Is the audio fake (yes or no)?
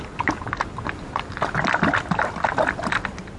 no